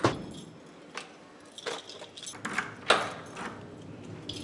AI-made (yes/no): no